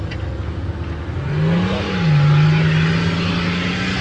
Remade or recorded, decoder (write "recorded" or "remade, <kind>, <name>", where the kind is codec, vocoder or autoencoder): recorded